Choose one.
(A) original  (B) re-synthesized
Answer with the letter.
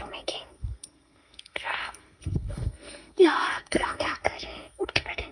B